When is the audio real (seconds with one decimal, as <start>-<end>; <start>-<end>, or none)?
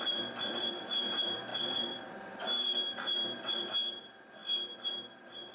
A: 4.4-5.5